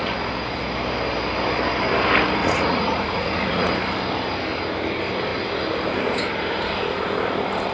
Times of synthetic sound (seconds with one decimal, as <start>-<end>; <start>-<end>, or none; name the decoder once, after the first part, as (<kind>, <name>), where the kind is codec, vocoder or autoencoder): 2.4-3.7 (vocoder, Vocos)